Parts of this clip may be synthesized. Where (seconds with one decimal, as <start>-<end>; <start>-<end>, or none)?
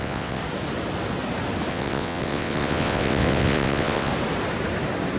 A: 0.0-0.4; 1.7-4.1